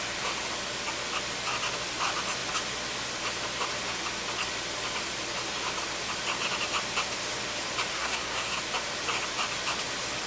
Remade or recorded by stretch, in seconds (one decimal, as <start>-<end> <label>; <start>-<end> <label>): 0.0-7.9 recorded; 7.9-8.6 remade; 8.6-10.3 recorded